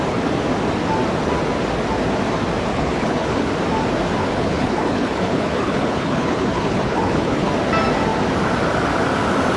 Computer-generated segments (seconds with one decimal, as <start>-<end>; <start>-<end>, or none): 2.7-3.5; 4.2-7.5